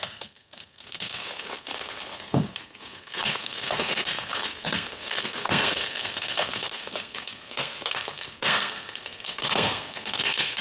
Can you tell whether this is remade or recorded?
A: remade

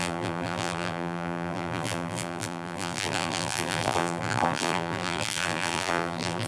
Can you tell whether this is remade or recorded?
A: remade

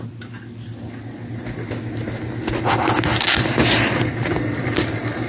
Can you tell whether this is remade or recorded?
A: recorded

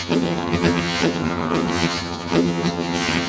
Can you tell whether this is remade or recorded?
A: remade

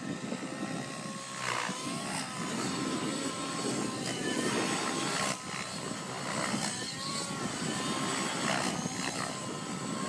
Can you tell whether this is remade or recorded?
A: recorded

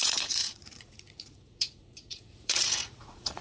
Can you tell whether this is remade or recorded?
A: remade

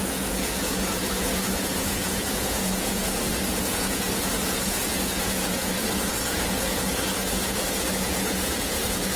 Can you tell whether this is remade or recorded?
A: remade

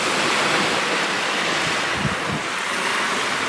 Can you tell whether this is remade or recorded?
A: recorded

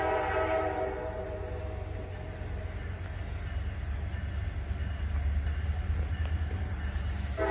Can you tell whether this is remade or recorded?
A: recorded